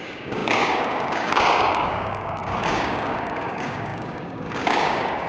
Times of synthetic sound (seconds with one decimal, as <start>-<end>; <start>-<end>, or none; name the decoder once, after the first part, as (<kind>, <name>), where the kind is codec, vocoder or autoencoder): 0.0-5.3 (codec, DAC)